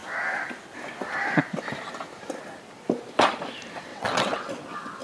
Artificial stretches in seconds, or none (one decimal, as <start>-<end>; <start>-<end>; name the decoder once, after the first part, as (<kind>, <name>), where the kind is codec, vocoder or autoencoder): 3.9-4.5 (vocoder, WaveNeXt)